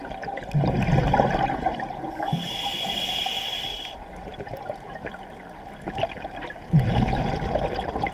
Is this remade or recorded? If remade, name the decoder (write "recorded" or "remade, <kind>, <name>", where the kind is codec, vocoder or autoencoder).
recorded